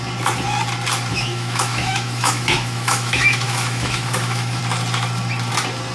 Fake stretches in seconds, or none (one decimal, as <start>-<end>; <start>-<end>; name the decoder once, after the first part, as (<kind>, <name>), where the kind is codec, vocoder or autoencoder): 1.1-4.6 (autoencoder, DAC-VAE)